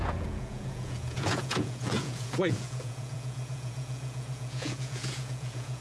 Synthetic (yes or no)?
yes